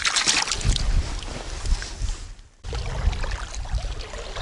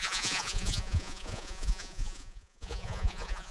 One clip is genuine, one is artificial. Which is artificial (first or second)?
second